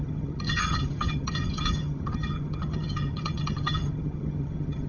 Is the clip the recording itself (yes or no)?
no